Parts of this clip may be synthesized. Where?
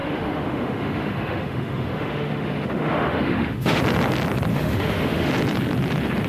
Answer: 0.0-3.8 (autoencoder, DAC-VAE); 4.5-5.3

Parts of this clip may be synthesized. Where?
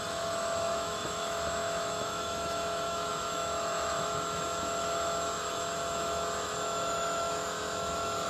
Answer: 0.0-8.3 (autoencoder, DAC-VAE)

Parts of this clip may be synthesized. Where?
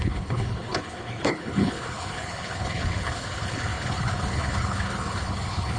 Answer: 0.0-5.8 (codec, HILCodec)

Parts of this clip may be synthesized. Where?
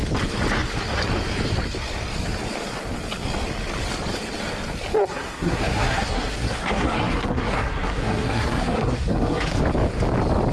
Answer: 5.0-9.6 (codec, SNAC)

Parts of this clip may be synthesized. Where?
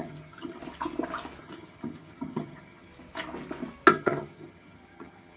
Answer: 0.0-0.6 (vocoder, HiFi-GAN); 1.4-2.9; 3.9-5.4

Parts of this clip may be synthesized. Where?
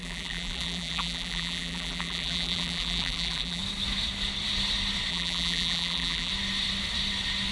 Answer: 0.0-3.6 (vocoder, BigVGAN v2); 5.1-6.3